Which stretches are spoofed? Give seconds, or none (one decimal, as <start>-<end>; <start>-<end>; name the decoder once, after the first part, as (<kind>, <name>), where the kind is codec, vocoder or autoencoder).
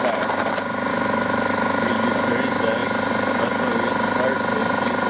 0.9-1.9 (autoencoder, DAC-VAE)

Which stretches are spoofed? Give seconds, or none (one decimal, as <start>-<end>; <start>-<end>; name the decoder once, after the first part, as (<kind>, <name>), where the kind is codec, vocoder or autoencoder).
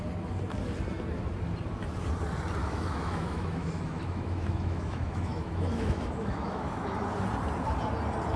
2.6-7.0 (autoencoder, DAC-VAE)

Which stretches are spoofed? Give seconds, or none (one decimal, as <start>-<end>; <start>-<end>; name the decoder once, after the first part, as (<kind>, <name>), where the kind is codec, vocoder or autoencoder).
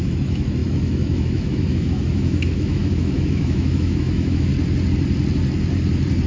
0.0-4.5 (autoencoder, DAC-VAE)